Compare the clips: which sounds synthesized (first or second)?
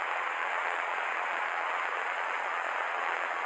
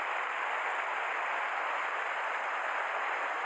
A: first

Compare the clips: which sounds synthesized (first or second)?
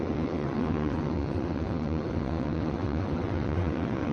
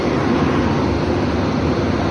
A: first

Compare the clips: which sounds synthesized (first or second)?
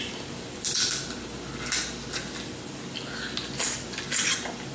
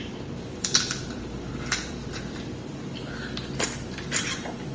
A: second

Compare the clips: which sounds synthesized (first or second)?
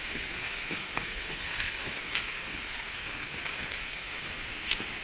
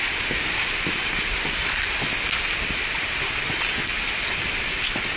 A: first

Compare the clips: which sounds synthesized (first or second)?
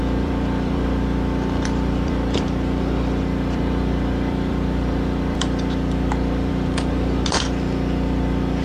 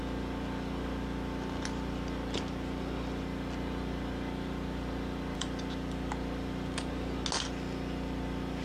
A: first